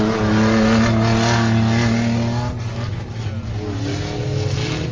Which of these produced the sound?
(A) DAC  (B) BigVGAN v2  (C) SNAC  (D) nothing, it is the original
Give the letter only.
D